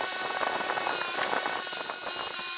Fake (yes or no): no